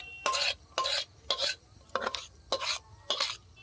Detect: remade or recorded recorded